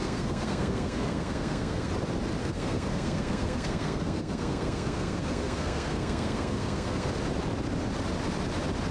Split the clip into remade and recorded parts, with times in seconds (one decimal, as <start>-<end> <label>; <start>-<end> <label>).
0.0-1.9 remade; 1.9-2.4 recorded; 2.4-7.1 remade; 7.1-8.9 recorded